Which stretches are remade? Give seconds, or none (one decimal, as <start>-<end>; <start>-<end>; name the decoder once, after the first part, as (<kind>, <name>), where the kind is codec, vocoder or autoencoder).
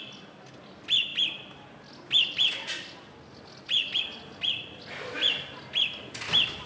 none